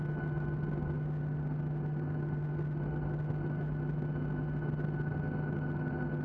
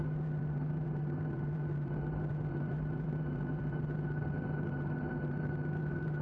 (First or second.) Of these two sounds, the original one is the first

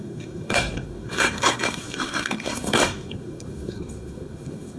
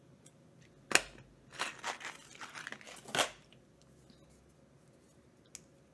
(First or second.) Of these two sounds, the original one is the second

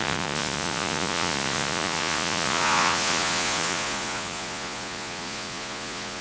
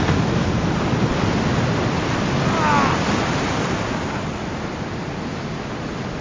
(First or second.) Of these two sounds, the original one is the second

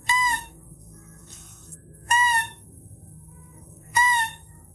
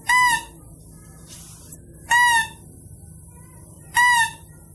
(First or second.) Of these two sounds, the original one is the second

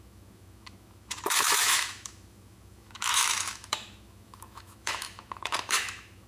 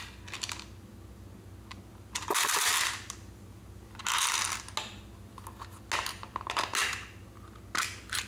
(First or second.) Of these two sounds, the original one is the second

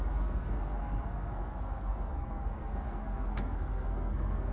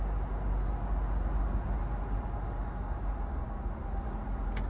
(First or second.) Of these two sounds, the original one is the second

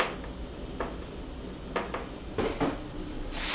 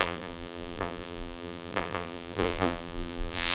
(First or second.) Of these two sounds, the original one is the first